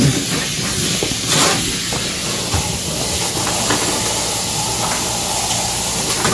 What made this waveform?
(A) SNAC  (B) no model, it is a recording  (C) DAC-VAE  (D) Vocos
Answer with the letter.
B